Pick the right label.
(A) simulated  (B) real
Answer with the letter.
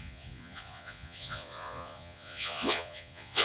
A